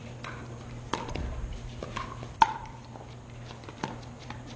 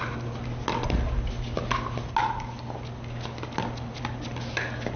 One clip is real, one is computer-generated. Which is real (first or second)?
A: second